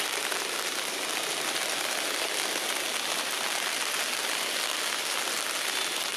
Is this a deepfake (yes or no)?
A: no